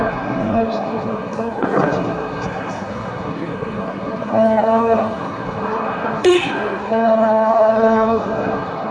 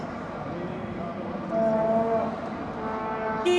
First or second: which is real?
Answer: second